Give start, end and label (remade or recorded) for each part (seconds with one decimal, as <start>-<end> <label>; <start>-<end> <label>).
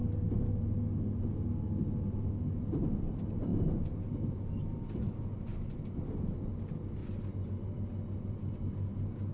0.0-5.5 recorded; 5.5-6.0 remade; 6.0-7.0 recorded; 7.0-8.7 remade; 8.7-9.3 recorded